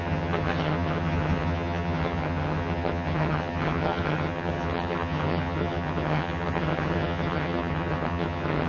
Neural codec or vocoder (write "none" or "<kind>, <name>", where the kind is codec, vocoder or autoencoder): vocoder, HiFi-GAN